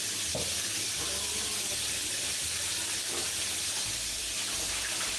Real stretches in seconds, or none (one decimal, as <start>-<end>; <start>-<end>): 0.0-5.2